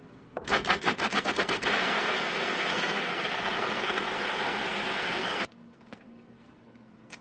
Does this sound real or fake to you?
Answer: fake